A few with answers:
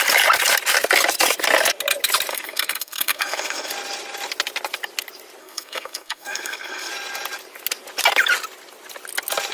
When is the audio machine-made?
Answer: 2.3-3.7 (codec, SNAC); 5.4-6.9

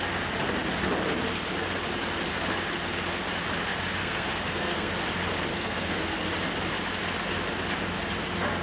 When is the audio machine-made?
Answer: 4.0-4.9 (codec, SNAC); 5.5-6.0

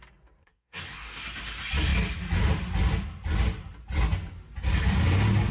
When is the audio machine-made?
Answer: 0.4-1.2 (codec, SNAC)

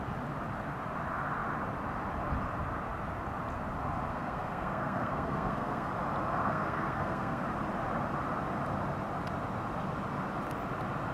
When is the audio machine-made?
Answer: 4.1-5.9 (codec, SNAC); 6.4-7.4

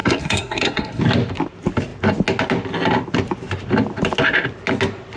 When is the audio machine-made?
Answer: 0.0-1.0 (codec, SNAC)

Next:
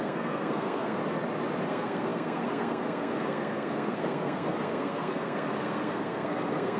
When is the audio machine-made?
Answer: 0.0-1.0 (codec, SNAC); 1.7-6.8